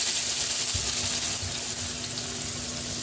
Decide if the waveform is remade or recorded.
recorded